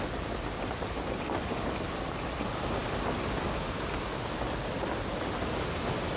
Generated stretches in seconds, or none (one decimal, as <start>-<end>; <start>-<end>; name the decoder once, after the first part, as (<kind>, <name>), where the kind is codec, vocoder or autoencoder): none